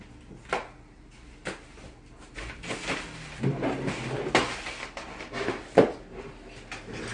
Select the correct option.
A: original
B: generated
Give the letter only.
A